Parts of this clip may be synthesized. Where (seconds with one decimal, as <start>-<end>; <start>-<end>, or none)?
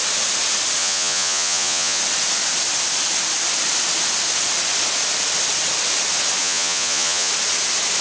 0.8-2.0; 6.4-7.3